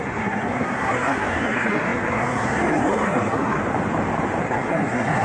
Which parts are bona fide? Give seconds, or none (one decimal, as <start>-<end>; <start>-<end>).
3.6-4.4